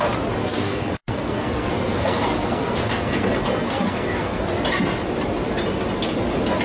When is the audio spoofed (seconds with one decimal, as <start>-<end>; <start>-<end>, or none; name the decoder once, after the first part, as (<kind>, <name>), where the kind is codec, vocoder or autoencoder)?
0.4-4.4 (codec, SNAC)